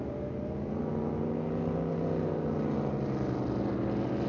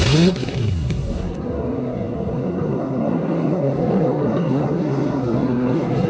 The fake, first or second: second